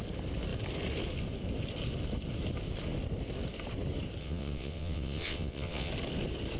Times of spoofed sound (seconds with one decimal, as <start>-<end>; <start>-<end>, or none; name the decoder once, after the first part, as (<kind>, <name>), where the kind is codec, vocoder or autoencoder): 4.2-5.9 (vocoder, WaveNeXt)